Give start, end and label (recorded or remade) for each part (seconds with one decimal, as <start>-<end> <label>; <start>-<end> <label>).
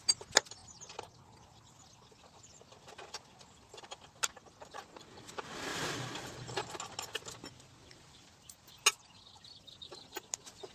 0.0-5.7 recorded; 5.7-6.7 remade; 6.7-7.8 recorded; 7.8-8.8 remade; 8.8-10.7 recorded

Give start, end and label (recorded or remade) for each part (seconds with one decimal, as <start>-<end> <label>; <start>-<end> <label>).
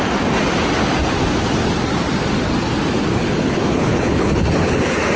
0.0-3.1 recorded; 3.1-4.8 remade; 4.8-5.2 recorded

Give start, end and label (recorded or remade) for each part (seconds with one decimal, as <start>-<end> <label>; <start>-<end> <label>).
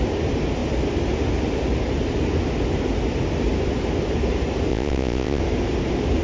0.0-4.7 recorded; 4.7-5.4 remade; 5.4-6.2 recorded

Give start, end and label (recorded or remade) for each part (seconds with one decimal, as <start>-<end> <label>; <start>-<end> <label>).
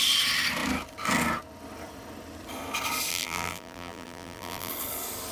0.0-3.1 recorded; 3.1-4.7 remade; 4.7-5.3 recorded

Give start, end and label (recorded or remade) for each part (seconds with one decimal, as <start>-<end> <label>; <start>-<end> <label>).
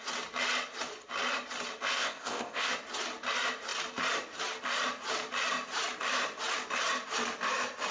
0.0-2.0 recorded; 2.0-2.7 remade; 2.7-7.9 recorded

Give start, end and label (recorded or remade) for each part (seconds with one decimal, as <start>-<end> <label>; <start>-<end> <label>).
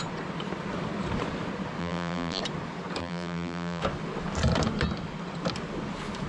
0.0-1.8 recorded; 1.8-2.4 remade; 2.4-3.0 recorded; 3.0-3.8 remade; 3.8-6.3 recorded